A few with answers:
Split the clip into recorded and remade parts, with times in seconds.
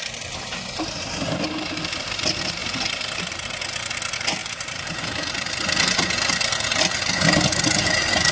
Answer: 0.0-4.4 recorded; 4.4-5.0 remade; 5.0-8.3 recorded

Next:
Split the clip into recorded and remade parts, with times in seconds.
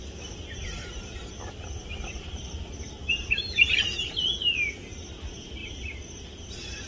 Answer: 0.0-6.9 recorded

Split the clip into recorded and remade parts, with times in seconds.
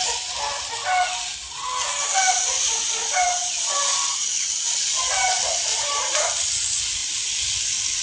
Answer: 0.0-5.7 recorded; 5.7-6.3 remade; 6.3-8.0 recorded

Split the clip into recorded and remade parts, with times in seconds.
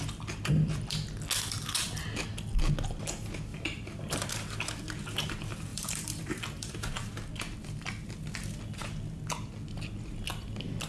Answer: 0.0-3.5 recorded; 3.5-4.3 remade; 4.3-5.7 recorded; 5.7-7.1 remade; 7.1-10.9 recorded